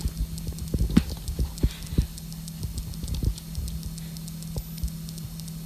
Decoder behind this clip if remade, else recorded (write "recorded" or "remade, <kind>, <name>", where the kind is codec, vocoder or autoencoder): recorded